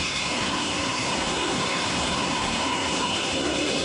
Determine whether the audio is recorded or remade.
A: remade